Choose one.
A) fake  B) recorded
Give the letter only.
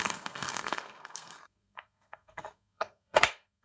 A